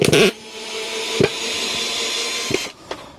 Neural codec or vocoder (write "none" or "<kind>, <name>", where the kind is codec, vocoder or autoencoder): none